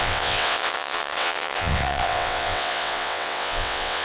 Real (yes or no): no